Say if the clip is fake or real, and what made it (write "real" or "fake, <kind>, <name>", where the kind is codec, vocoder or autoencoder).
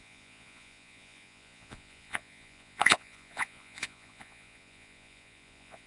fake, vocoder, Vocos